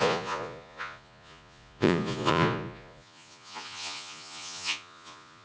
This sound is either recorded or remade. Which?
remade